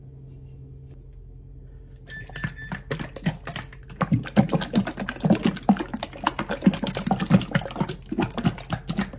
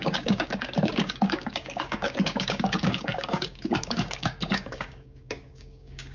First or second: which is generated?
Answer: second